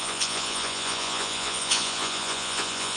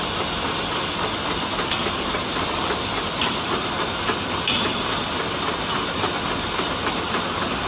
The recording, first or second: second